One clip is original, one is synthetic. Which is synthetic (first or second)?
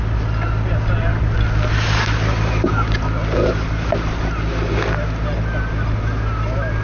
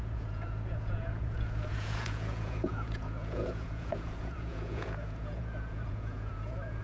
second